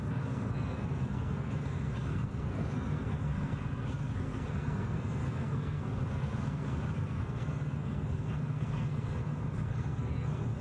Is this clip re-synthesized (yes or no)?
yes